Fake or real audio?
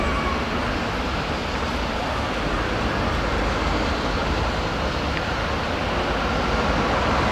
real